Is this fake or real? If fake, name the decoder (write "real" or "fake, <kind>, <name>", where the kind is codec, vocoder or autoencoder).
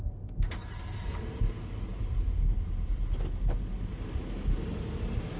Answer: real